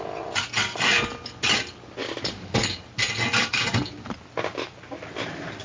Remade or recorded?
recorded